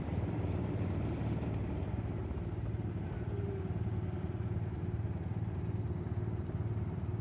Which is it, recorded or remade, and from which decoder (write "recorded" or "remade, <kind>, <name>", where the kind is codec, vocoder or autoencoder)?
recorded